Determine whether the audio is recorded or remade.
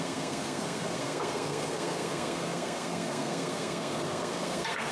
remade